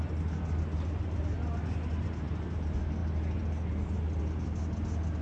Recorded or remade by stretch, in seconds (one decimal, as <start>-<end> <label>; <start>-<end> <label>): 0.0-5.2 recorded